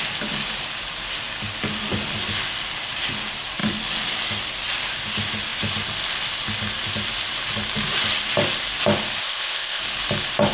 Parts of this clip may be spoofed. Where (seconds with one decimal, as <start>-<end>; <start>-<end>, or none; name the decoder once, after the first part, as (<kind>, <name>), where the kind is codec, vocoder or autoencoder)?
9.2-9.8 (codec, ZipCodec)